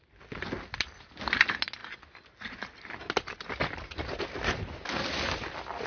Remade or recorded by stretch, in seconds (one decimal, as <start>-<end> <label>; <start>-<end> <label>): 0.0-5.9 recorded